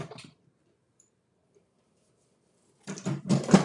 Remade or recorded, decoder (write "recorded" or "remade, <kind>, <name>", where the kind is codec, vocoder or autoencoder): recorded